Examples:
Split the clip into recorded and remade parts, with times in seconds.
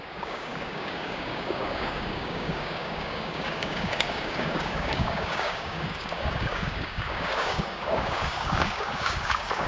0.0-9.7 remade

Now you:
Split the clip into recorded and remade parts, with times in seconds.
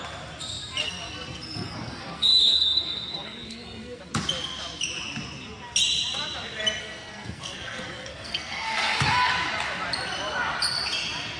0.0-0.8 recorded; 0.8-4.1 remade; 4.1-6.8 recorded; 6.8-9.3 remade; 9.3-11.4 recorded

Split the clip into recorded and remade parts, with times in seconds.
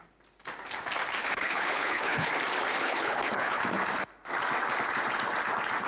0.0-1.2 recorded; 1.2-2.3 remade; 2.3-2.8 recorded; 2.8-3.6 remade; 3.6-5.9 recorded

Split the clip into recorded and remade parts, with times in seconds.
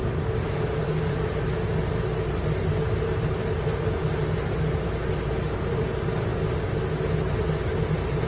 0.0-8.3 recorded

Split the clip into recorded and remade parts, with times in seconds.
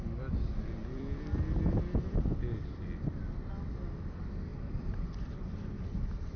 0.0-0.8 recorded; 0.8-3.5 remade; 3.5-4.5 recorded; 4.5-6.4 remade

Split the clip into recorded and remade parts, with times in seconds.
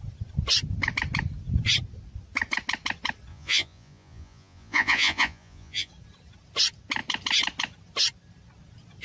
0.0-3.3 recorded; 3.3-5.9 remade; 5.9-9.0 recorded